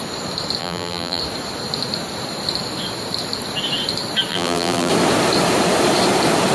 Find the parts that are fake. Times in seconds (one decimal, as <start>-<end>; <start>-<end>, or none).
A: 0.6-1.2; 4.3-4.9